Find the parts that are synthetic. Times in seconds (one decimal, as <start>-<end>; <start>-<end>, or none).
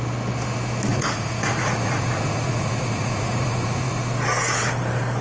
0.9-4.0